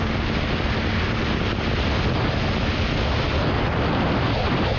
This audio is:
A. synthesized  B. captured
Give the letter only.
B